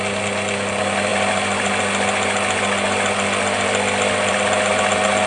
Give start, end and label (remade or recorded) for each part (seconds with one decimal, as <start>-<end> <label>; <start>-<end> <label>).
0.0-5.3 recorded